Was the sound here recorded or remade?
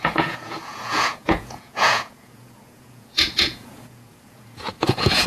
remade